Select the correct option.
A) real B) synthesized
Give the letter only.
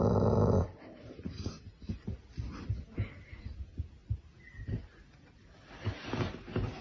A